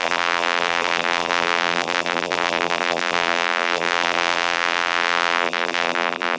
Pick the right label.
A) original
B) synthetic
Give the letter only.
B